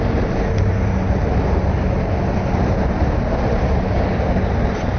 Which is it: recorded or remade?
recorded